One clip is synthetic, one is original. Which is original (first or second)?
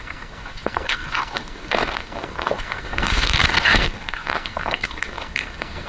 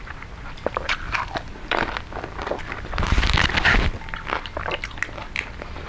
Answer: second